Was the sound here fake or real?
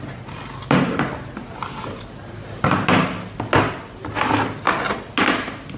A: real